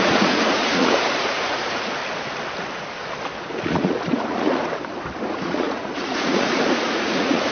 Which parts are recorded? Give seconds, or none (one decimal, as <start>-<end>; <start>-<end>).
2.0-3.4; 4.6-5.3

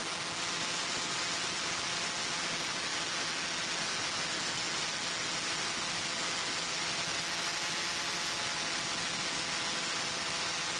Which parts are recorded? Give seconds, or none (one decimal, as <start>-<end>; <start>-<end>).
0.0-10.8

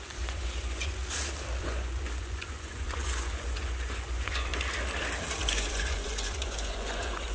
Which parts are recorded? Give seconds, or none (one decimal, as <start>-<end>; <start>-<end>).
1.0-1.6; 4.5-5.4

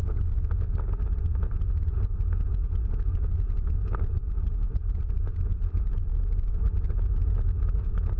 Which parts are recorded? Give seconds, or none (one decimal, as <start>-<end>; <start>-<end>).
6.1-6.7